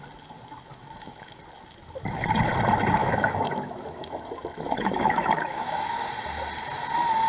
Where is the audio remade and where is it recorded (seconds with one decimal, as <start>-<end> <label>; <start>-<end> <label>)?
0.0-0.7 recorded; 0.7-1.4 remade; 1.4-3.0 recorded; 3.0-6.1 remade; 6.1-7.3 recorded